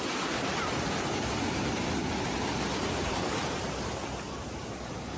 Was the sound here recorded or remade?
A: recorded